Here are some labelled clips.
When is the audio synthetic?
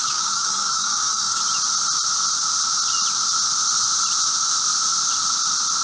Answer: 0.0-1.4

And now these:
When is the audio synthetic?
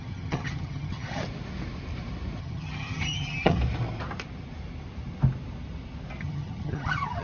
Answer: 0.0-1.2; 2.4-3.6; 6.2-7.2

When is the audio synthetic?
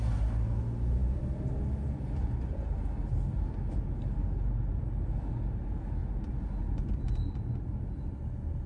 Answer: 1.0-1.6; 6.0-7.4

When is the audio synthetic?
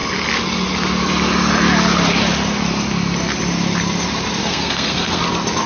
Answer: 4.4-5.2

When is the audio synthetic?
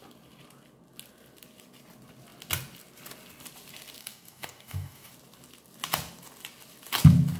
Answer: 4.0-5.1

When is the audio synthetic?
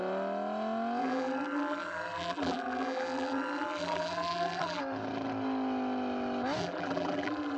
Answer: 1.0-4.8; 6.6-7.6